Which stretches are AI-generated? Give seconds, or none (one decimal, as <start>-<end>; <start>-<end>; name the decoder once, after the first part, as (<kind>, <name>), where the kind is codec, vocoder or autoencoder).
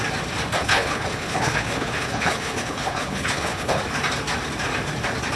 0.6-3.8 (codec, HILCodec)